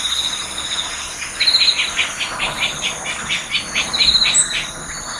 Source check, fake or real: real